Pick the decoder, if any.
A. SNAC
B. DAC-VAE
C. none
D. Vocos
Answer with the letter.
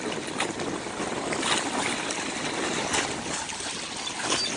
C